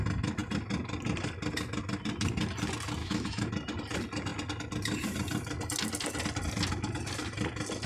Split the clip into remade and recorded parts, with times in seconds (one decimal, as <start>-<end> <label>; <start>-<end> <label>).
0.0-3.0 recorded; 3.0-3.5 remade; 3.5-7.9 recorded